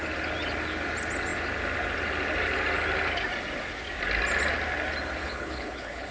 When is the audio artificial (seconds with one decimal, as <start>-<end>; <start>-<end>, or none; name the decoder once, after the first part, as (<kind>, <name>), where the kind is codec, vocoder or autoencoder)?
5.2-6.1 (codec, HILCodec)